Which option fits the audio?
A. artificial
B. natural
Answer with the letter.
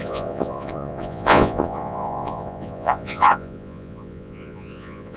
A